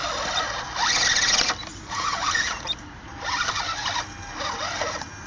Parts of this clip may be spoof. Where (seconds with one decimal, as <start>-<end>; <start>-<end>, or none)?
none